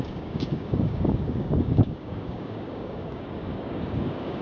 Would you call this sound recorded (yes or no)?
no